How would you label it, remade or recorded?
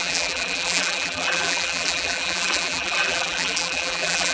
remade